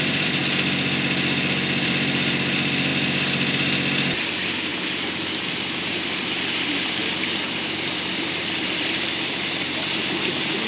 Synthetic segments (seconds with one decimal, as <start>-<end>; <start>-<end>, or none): 0.0-0.4; 1.8-2.9; 4.1-4.7; 5.5-10.7